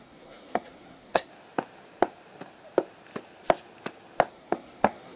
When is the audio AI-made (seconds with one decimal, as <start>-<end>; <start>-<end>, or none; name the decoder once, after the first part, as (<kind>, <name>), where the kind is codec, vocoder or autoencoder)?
0.0-1.3 (codec, SNAC); 4.3-5.2